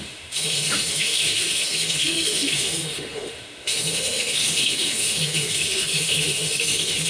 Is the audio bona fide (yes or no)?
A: no